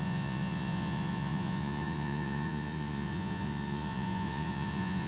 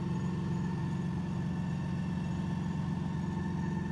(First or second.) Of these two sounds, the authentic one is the second